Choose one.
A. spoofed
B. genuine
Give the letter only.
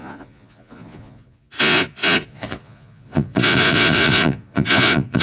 A